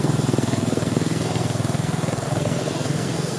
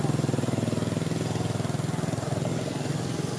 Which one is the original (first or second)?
second